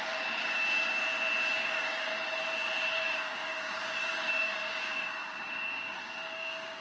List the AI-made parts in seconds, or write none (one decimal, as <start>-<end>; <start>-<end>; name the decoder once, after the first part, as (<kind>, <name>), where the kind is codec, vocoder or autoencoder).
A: 0.0-1.0 (codec, DAC); 1.5-2.1; 2.9-6.8